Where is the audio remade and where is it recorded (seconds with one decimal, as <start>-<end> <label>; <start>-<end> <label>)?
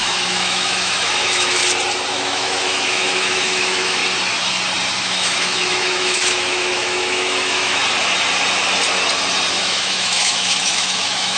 0.0-1.6 remade; 1.6-2.1 recorded; 2.1-4.0 remade; 4.0-5.0 recorded; 5.0-7.8 remade; 7.8-9.5 recorded; 9.5-11.4 remade